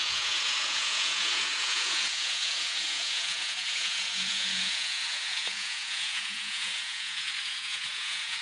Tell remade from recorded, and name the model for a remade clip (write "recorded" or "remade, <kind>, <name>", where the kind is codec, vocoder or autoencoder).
remade, vocoder, Vocos